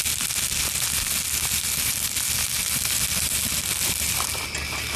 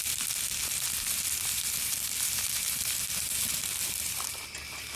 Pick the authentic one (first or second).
first